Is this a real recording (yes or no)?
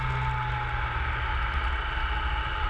yes